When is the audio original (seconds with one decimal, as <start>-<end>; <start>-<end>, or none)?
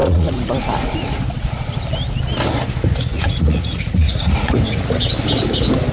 0.5-3.1; 4.6-5.9